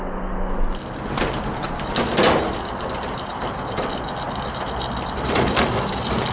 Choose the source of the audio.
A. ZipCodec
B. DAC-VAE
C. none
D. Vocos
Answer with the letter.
C